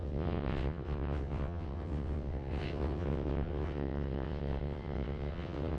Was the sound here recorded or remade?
remade